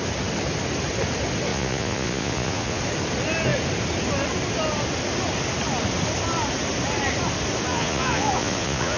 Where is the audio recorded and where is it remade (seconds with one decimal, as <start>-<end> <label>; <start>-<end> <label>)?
0.0-1.5 recorded; 1.5-2.8 remade; 2.8-7.7 recorded; 7.7-9.0 remade